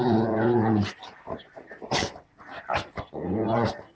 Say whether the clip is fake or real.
fake